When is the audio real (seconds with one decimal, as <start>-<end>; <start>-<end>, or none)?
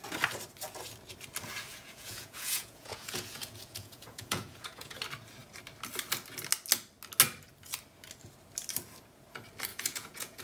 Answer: 0.0-1.7; 5.0-9.7